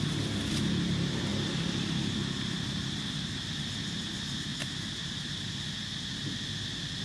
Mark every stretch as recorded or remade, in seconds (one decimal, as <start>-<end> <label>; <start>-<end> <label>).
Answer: 0.0-7.0 recorded